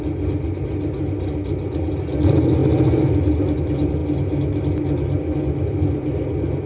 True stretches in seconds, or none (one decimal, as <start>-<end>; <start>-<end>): 0.0-6.7